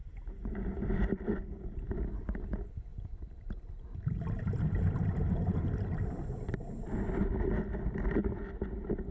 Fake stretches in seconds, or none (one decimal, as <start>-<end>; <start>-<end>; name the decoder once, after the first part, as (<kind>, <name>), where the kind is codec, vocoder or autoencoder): 0.0-2.1 (vocoder, BigVGAN v2); 2.9-7.0